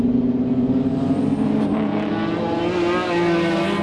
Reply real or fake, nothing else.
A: real